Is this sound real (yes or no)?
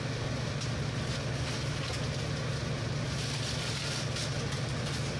yes